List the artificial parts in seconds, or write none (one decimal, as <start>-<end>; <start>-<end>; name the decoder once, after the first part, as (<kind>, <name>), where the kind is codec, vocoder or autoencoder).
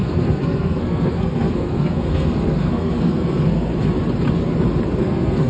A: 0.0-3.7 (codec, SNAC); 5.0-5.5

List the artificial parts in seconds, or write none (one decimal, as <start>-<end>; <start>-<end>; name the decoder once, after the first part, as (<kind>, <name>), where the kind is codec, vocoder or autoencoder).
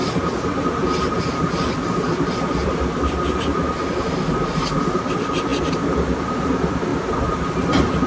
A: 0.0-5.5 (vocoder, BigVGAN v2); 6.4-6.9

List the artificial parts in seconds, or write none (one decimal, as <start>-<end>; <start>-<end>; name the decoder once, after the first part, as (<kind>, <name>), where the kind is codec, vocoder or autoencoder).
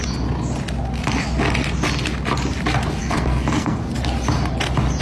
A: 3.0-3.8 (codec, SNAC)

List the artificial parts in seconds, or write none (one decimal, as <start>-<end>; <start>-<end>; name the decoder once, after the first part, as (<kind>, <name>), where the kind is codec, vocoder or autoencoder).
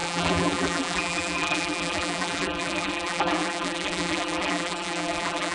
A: 0.0-5.5 (vocoder, BigVGAN v2)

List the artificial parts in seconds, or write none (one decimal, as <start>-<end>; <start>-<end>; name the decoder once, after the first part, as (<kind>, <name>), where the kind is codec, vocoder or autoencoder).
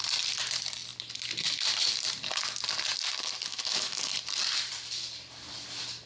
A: 3.5-4.1 (autoencoder, DAC-VAE)